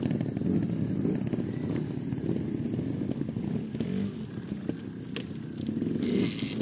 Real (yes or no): yes